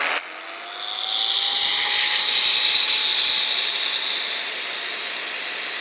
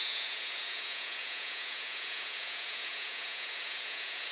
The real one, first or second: first